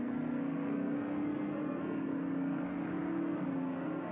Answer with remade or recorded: remade